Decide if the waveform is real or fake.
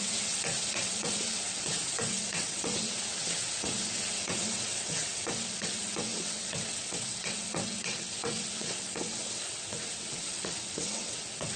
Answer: fake